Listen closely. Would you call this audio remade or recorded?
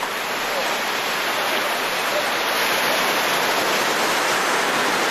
recorded